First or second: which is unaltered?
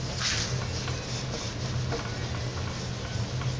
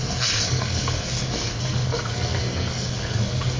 first